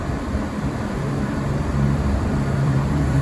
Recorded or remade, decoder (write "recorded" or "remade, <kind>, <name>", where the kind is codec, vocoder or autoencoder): remade, vocoder, BigVGAN v2